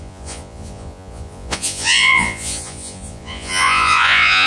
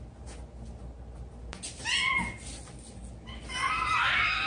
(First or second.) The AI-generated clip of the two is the first